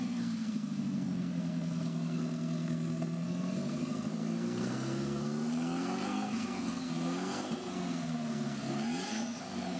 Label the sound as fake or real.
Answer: fake